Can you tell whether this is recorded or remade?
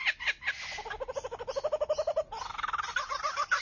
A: recorded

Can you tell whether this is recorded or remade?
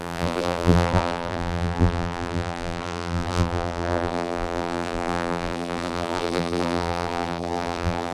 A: remade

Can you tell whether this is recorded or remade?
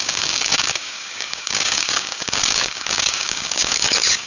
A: remade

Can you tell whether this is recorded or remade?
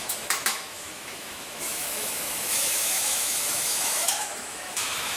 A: remade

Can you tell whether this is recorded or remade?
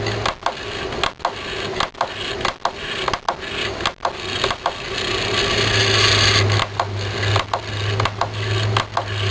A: recorded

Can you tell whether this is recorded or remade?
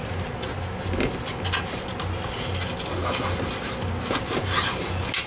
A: recorded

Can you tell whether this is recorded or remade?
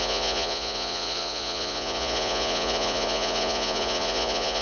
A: remade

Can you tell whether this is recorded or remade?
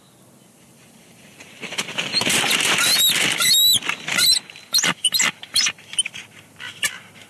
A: remade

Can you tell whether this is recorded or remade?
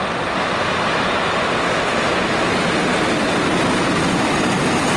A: recorded